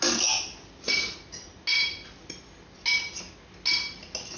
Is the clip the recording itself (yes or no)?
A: yes